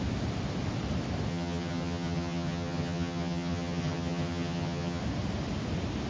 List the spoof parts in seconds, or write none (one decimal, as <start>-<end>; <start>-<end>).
1.3-5.0